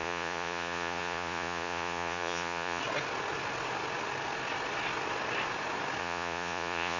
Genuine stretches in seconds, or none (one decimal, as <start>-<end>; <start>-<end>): 2.8-6.0